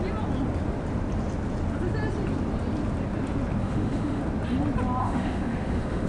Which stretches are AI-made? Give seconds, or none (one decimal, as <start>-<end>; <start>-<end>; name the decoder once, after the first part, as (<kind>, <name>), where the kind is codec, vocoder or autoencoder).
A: 3.6-4.2 (autoencoder, DAC-VAE); 5.0-6.1